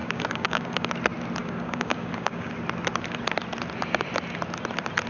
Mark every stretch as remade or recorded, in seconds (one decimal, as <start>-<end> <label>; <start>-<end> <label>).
0.0-0.9 remade; 0.9-1.4 recorded; 1.4-2.5 remade; 2.5-5.1 recorded